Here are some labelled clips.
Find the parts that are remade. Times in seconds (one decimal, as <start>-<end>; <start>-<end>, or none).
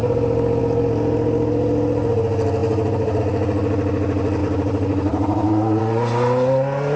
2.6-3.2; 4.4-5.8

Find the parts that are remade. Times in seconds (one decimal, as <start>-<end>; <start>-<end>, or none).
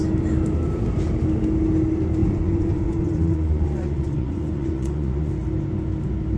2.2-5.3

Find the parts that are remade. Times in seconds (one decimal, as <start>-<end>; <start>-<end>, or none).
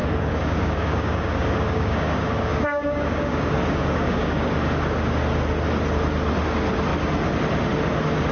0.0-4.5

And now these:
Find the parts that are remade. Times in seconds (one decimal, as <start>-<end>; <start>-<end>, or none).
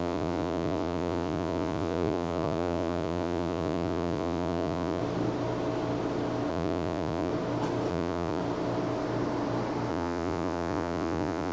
0.0-5.0; 6.5-7.3; 7.9-8.4; 9.9-11.5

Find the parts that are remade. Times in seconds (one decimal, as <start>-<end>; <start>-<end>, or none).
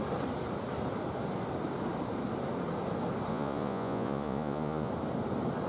3.3-4.9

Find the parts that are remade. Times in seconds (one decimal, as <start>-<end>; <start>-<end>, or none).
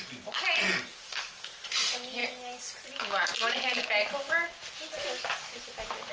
none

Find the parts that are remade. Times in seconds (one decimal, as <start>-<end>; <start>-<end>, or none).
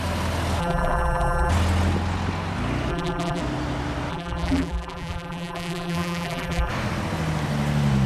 0.6-1.5; 2.9-3.4; 4.1-6.7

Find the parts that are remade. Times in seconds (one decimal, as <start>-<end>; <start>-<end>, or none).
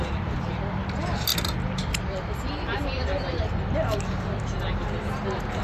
none